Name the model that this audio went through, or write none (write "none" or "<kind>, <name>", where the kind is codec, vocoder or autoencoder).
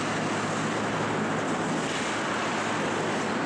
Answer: none